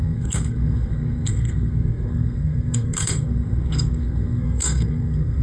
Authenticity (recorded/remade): remade